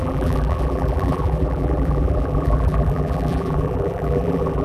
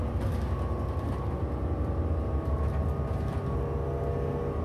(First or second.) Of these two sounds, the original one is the second